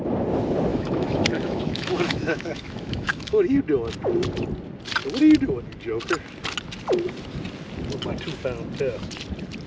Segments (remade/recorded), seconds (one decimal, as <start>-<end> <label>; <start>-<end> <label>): 0.0-0.7 recorded; 0.7-3.6 remade; 3.6-9.7 recorded